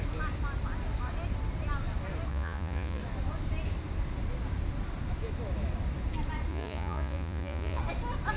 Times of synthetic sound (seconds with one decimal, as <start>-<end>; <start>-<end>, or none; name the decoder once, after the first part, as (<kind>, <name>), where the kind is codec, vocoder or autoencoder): 2.3-3.0 (vocoder, Vocos); 6.5-7.8